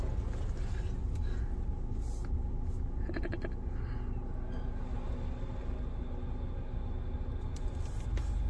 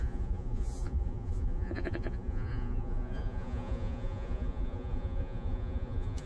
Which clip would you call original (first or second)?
first